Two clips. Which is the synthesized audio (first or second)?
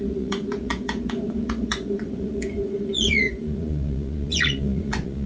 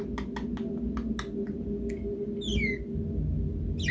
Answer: first